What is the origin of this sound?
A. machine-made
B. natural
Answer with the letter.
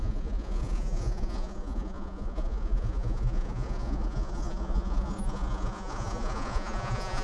A